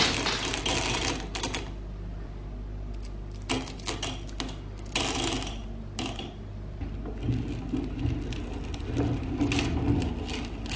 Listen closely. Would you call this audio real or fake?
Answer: real